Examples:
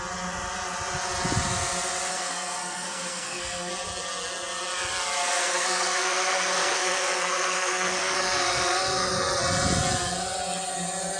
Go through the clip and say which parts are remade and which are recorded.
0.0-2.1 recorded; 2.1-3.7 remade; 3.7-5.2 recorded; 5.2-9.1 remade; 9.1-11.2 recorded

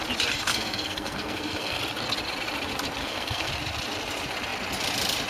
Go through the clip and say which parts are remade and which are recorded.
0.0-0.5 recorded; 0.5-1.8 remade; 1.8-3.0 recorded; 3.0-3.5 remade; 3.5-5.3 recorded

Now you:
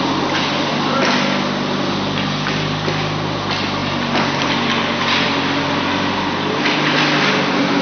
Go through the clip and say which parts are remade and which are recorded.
0.0-7.8 recorded